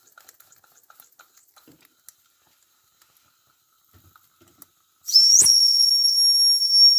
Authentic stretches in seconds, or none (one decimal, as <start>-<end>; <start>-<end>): 0.0-5.3; 5.9-7.0